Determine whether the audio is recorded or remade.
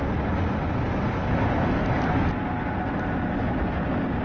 recorded